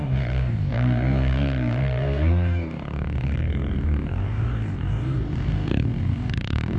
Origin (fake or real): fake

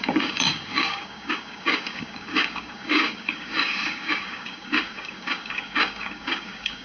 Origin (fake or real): fake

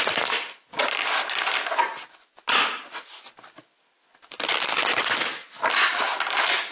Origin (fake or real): real